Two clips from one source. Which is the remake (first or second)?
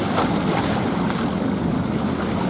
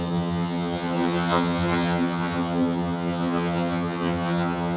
second